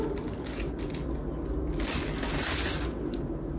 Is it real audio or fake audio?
real